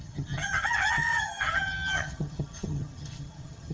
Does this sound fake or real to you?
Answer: fake